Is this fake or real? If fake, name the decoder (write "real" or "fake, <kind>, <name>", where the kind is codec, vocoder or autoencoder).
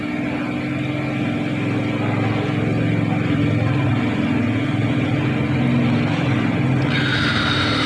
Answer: real